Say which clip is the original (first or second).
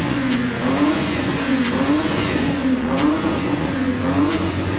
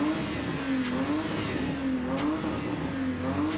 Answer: second